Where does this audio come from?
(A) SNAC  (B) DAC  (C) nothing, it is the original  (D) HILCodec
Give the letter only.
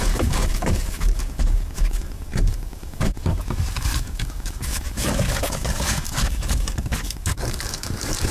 B